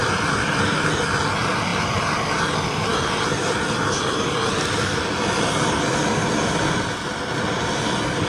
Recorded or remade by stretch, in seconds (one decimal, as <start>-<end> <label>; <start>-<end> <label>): 0.0-0.6 remade; 0.6-8.3 recorded